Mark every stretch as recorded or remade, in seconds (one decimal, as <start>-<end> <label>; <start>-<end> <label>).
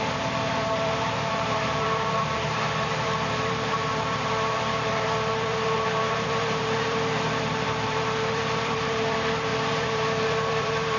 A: 0.0-11.0 remade